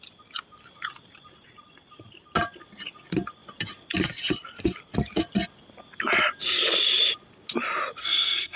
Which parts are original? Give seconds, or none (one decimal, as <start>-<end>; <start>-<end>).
0.0-8.0